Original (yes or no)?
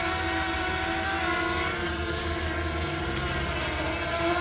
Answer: yes